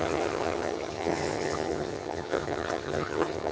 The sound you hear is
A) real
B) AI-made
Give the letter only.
B